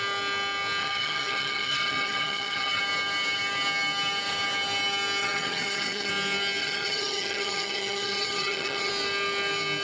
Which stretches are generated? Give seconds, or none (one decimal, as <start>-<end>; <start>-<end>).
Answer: 0.8-2.8; 5.2-6.1; 6.6-8.9